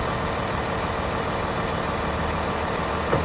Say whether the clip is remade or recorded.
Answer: recorded